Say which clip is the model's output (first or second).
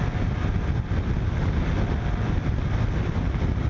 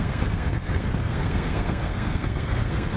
second